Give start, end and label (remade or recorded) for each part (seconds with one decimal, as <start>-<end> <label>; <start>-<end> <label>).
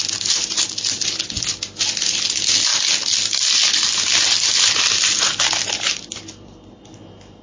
0.0-7.4 recorded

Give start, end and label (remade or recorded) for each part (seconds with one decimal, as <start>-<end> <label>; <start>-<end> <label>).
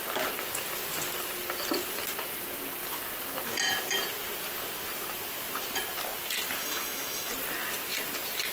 0.0-6.6 recorded; 6.6-7.3 remade; 7.3-8.5 recorded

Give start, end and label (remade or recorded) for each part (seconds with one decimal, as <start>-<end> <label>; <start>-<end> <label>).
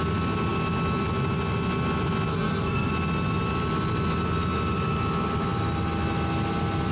0.0-2.3 recorded; 2.3-2.9 remade; 2.9-6.9 recorded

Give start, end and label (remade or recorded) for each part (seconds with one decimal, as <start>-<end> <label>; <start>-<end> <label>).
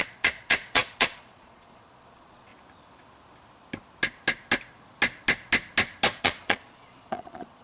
0.0-2.5 remade; 2.5-6.2 recorded; 6.2-7.6 remade